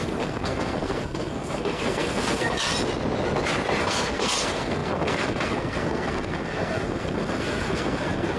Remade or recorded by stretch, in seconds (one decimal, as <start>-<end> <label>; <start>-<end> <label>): 0.0-2.7 remade; 2.7-3.8 recorded; 3.8-8.4 remade